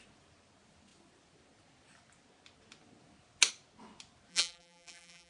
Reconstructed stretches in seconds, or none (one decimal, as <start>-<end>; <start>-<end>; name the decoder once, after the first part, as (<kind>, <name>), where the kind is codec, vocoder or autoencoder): 4.3-5.3 (vocoder, BigVGAN v2)